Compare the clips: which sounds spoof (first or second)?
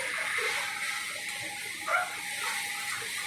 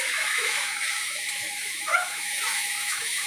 second